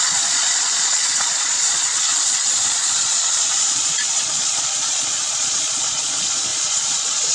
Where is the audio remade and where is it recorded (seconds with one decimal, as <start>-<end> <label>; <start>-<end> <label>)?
0.0-7.3 remade